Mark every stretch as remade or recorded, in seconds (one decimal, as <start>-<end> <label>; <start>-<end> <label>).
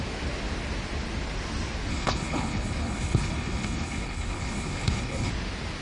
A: 0.0-1.9 recorded; 1.9-5.3 remade; 5.3-5.8 recorded